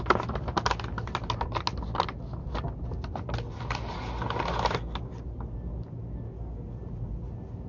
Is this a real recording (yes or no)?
yes